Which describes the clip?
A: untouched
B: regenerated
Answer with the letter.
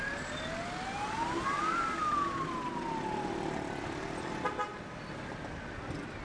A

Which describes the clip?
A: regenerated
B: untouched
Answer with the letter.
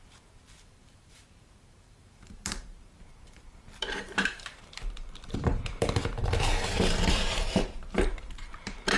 A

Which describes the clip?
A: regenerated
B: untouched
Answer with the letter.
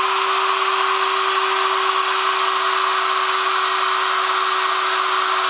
B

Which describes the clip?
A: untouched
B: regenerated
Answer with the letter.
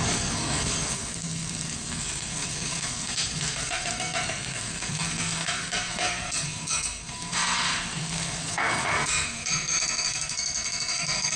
B